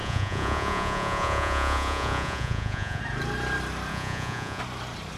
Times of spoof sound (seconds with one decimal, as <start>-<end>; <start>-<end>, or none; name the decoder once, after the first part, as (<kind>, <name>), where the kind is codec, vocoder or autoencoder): 0.0-3.0 (vocoder, Vocos); 3.9-4.6